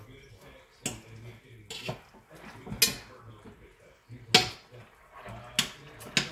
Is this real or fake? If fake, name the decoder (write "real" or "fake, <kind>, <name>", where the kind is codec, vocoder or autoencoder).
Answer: real